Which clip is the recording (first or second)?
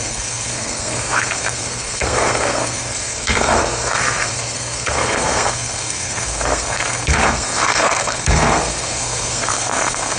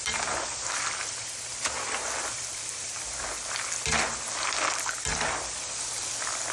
second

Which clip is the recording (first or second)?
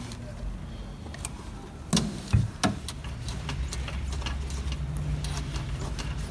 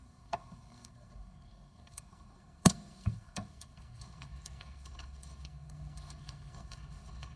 first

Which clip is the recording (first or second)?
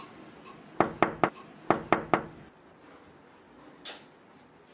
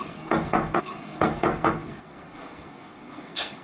first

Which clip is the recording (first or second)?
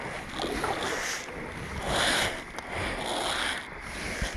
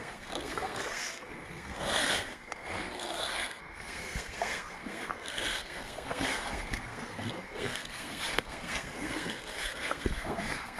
first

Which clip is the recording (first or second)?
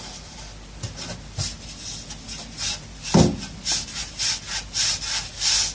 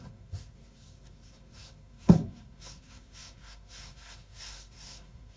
first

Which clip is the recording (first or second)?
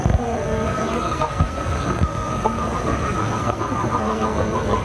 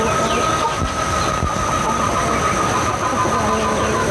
second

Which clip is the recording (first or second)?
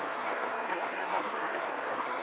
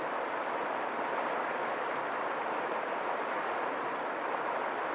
second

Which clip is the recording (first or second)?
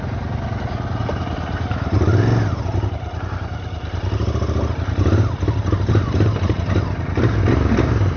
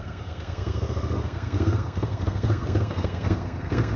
first